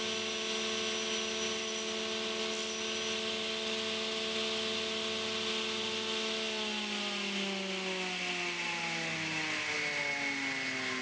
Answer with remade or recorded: recorded